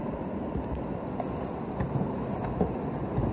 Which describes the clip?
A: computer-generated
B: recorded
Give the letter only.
B